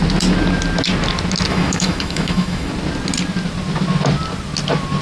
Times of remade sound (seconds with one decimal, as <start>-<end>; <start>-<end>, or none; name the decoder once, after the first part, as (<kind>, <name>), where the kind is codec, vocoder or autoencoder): 1.5-2.7 (autoencoder, DAC-VAE)